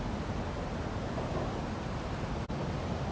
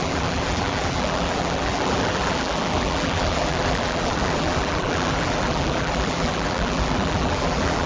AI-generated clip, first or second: second